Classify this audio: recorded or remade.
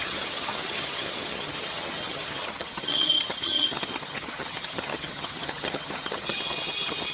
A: remade